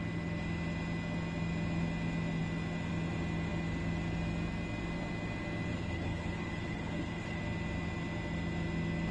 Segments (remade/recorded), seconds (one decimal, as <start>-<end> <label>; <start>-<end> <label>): 0.0-5.7 recorded; 5.7-7.4 remade; 7.4-9.1 recorded